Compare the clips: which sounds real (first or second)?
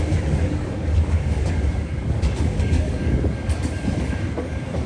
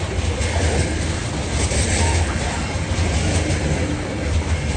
second